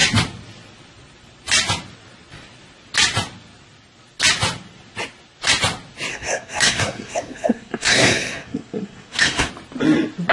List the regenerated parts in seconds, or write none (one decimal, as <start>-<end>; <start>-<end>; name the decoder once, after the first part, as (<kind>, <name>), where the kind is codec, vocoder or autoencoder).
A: 6.1-9.5 (codec, SNAC)